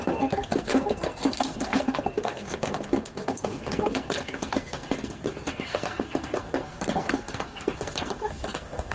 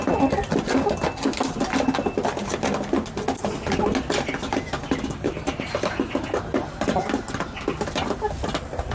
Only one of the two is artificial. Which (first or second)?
first